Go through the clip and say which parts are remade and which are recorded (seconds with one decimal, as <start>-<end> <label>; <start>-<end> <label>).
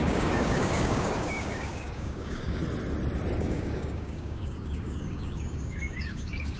0.0-2.6 remade; 2.6-3.4 recorded; 3.4-6.6 remade